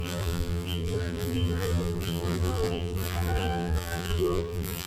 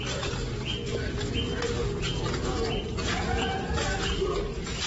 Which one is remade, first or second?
first